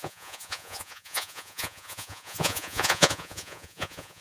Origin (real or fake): fake